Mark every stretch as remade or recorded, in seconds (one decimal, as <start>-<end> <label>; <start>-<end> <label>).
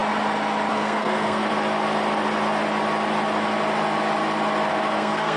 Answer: 0.0-0.7 recorded; 0.7-1.5 remade; 1.5-4.7 recorded; 4.7-5.4 remade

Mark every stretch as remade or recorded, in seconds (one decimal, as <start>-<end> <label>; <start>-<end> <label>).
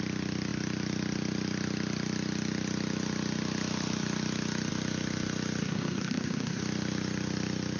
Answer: 0.0-5.6 recorded; 5.6-6.6 remade; 6.6-7.8 recorded